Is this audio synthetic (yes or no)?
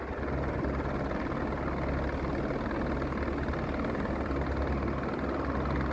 no